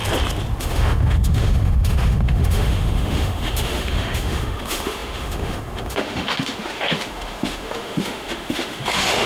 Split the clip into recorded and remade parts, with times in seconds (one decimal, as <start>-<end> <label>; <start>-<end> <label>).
0.0-0.6 recorded; 0.6-9.3 remade